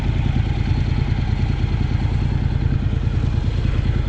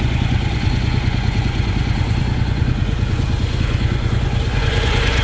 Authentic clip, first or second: first